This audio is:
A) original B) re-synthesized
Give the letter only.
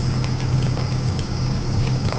B